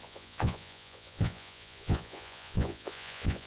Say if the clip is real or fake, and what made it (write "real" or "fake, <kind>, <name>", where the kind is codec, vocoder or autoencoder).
fake, vocoder, Vocos